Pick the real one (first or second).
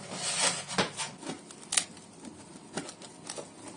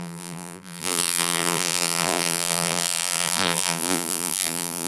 first